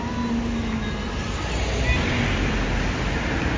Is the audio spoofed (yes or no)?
no